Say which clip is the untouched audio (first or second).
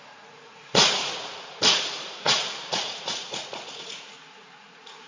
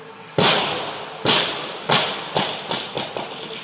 second